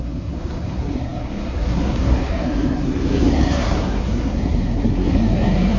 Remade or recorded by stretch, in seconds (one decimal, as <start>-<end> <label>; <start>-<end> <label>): 0.0-5.8 remade

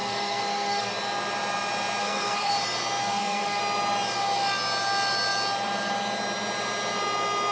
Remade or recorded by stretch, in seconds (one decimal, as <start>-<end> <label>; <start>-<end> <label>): 0.0-0.9 remade; 0.9-2.0 recorded; 2.0-2.5 remade; 2.5-3.0 recorded; 3.0-3.6 remade; 3.6-7.5 recorded